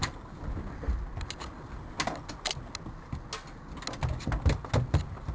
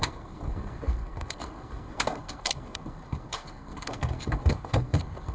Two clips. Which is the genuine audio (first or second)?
first